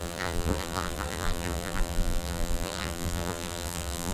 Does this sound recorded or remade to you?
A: remade